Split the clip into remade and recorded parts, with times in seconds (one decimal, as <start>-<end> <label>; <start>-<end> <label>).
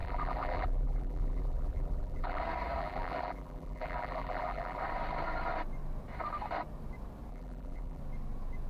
0.0-2.4 remade; 2.4-2.8 recorded; 2.8-4.8 remade; 4.8-7.3 recorded; 7.3-8.0 remade; 8.0-8.7 recorded